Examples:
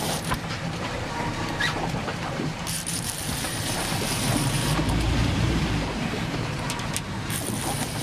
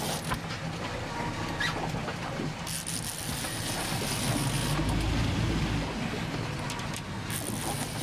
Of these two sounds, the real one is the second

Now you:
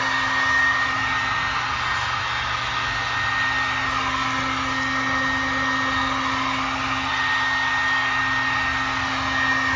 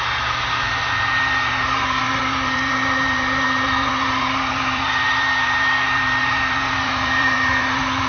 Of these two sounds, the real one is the first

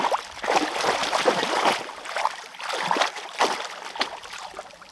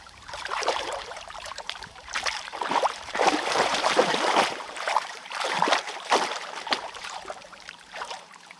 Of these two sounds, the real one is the first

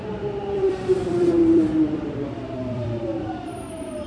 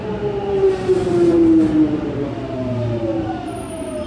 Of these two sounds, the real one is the second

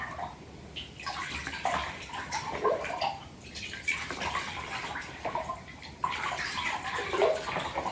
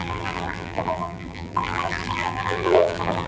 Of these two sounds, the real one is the first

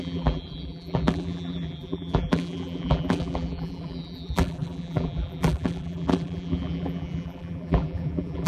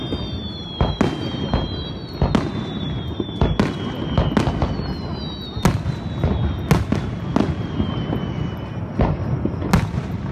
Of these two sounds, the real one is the second